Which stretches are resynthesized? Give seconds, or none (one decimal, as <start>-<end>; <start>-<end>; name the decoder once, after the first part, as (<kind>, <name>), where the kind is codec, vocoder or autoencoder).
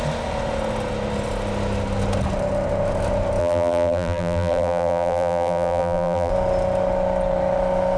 3.4-6.3 (vocoder, BigVGAN v2)